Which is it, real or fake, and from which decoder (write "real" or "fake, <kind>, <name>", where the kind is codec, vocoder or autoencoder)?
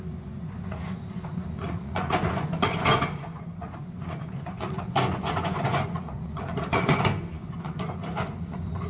fake, vocoder, Vocos